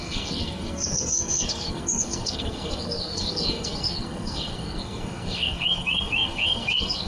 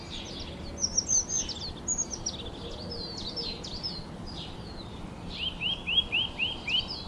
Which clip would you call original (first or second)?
second